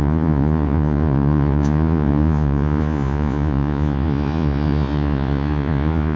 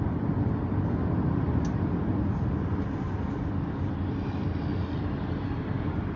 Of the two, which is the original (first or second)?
second